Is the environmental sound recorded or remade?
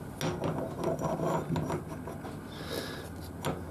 recorded